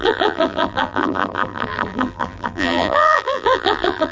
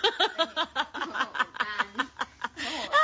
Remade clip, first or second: first